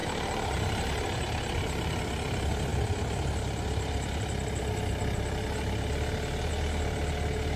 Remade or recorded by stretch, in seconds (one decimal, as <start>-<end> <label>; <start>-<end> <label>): 0.0-2.0 remade; 2.0-7.6 recorded